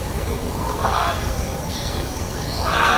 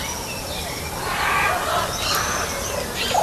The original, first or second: second